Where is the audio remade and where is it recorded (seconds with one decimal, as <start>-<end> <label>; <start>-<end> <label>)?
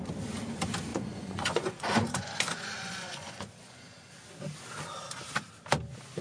0.0-0.9 recorded; 0.9-4.1 remade; 4.1-6.2 recorded